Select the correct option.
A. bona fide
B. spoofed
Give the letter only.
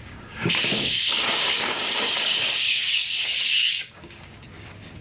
B